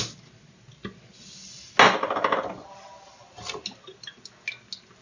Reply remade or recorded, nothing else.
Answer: recorded